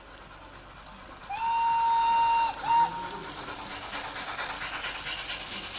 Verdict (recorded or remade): recorded